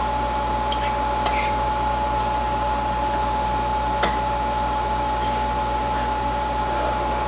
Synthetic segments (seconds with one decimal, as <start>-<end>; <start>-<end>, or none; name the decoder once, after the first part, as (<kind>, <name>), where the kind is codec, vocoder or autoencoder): none